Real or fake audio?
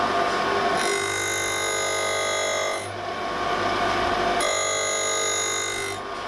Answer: real